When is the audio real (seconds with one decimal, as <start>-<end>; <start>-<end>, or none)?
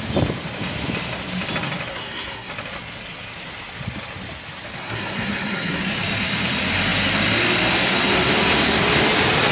0.0-1.9; 2.5-4.8; 5.8-9.5